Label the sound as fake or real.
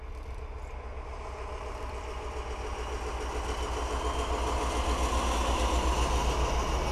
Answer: real